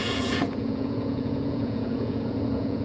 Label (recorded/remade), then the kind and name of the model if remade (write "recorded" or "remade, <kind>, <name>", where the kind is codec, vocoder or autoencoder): remade, vocoder, Vocos